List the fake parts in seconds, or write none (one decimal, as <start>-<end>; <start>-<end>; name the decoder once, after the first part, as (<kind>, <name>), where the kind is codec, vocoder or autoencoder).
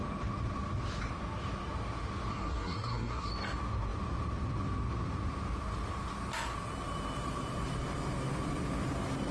2.3-3.3 (codec, SNAC)